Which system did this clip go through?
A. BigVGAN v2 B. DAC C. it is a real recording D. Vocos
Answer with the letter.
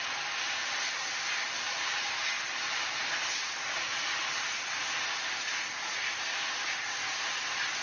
C